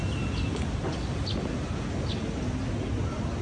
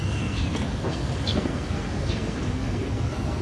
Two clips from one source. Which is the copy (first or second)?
second